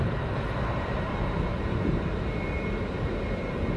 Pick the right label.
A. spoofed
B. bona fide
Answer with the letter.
B